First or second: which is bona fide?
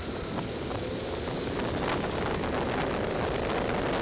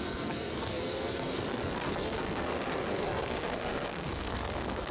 first